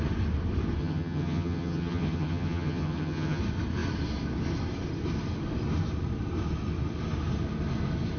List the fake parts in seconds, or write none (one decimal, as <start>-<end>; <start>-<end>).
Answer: 0.8-3.4